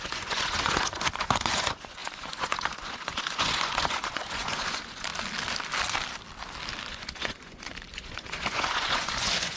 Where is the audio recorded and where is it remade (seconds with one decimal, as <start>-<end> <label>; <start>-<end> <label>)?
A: 0.0-5.1 remade; 5.1-6.9 recorded; 6.9-9.6 remade